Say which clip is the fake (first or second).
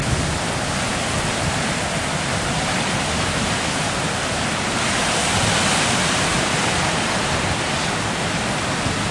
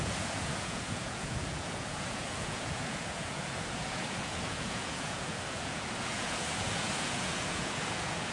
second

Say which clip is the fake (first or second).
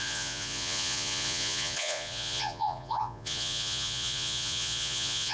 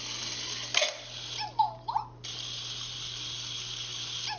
first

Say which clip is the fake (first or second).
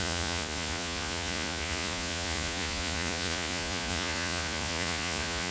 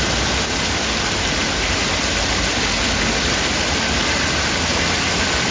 first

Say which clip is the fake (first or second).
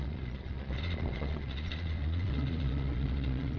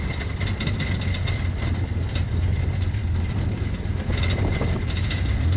first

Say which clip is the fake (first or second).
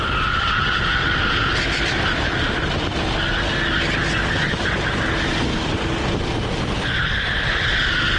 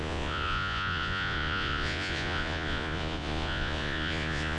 second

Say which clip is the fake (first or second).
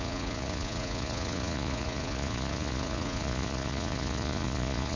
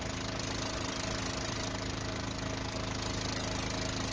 first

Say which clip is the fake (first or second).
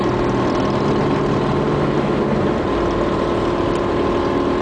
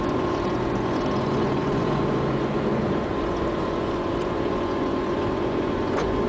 second